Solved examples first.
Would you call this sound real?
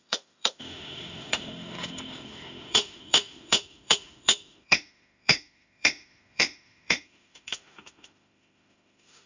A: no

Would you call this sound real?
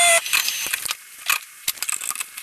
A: yes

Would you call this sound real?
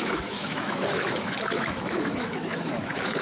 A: no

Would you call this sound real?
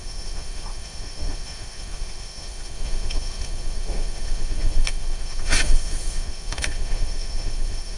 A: no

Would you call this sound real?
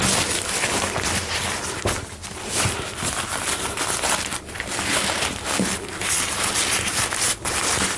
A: yes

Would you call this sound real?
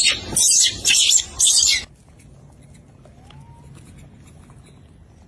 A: yes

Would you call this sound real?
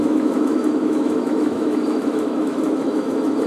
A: no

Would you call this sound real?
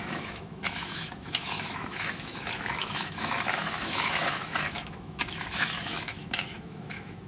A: no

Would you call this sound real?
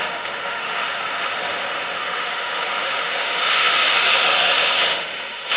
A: no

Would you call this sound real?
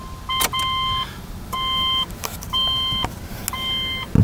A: yes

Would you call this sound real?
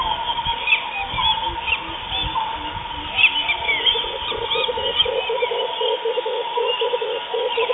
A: yes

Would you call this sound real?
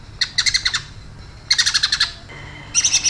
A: yes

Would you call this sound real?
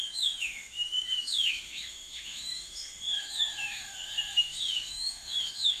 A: no